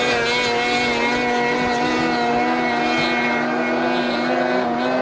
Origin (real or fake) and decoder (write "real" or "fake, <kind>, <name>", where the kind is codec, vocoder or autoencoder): real